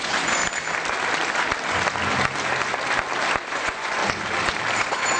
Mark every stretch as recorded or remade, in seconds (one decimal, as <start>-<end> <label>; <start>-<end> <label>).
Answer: 0.0-0.4 remade; 0.4-3.5 recorded; 3.5-4.0 remade; 4.0-4.8 recorded; 4.8-5.2 remade